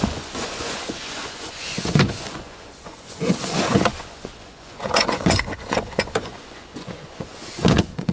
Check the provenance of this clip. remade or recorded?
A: remade